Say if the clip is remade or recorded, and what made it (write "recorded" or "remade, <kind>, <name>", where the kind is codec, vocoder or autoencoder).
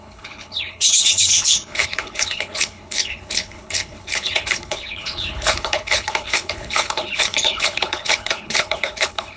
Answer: remade, codec, HILCodec